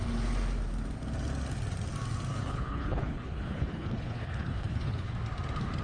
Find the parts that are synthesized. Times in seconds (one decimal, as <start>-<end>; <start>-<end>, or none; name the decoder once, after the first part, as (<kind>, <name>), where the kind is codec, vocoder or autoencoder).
2.3-5.1 (codec, HILCodec)

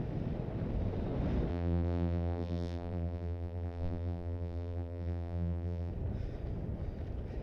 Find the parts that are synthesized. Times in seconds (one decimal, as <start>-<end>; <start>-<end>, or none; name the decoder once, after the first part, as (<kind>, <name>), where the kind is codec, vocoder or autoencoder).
1.5-5.9 (vocoder, BigVGAN v2)

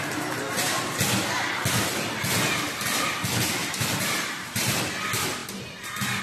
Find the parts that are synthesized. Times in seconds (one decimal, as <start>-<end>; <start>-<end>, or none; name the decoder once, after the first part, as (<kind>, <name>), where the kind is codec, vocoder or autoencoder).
3.6-4.8 (vocoder, BigVGAN v2)

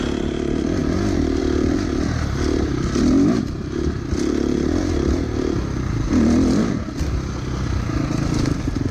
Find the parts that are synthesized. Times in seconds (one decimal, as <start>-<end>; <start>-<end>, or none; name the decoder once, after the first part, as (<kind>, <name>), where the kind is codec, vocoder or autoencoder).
none

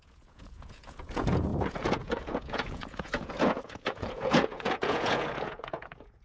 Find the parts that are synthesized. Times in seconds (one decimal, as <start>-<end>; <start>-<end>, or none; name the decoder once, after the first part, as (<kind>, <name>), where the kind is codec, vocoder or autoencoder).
0.0-6.2 (vocoder, Vocos)

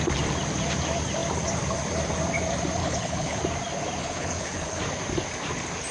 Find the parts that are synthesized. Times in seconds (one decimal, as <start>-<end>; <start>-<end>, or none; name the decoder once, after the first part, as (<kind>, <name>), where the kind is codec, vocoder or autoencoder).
2.8-3.4 (codec, HILCodec); 4.0-4.8

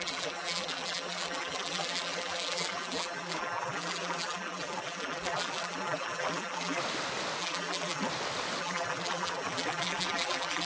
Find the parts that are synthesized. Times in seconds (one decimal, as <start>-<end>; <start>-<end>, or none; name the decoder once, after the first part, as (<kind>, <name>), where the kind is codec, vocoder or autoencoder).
0.0-6.8 (vocoder, BigVGAN v2); 7.4-8.1; 8.6-10.6